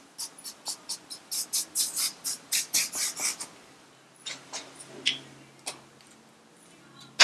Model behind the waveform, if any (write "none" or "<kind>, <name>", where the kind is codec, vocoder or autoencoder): none